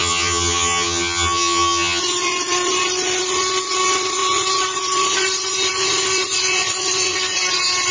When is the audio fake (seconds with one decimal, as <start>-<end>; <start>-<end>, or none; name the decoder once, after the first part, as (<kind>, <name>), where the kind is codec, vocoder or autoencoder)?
0.0-2.0 (vocoder, HiFi-GAN)